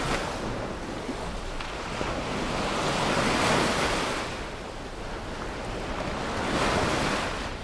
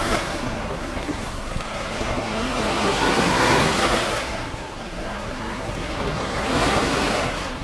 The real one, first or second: first